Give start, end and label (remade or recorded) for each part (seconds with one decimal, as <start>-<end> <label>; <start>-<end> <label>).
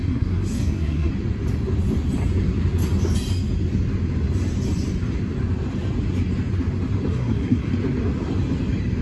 0.0-1.1 remade; 1.1-7.1 recorded; 7.1-7.7 remade; 7.7-9.0 recorded